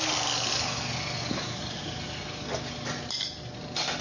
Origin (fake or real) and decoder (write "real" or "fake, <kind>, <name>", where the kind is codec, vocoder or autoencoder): real